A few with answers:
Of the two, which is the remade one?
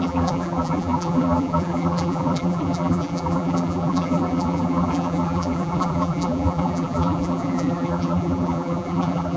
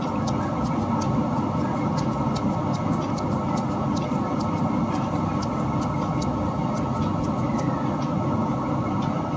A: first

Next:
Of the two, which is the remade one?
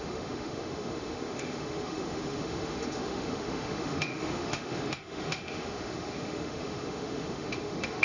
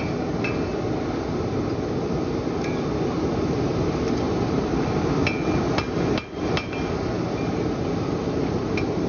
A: first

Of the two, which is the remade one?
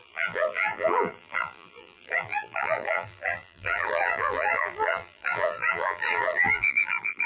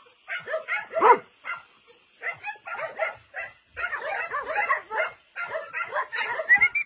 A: first